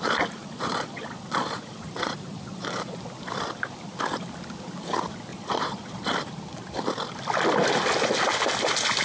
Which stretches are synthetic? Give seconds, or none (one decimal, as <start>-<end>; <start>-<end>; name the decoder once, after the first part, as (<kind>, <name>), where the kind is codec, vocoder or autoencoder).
0.4-2.8 (vocoder, Vocos); 5.3-6.0